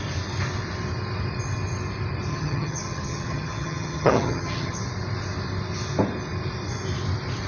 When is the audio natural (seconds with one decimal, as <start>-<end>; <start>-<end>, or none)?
0.0-2.3; 4.8-7.5